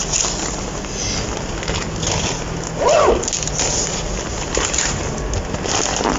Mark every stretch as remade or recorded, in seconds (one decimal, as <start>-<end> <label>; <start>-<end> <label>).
0.0-6.2 recorded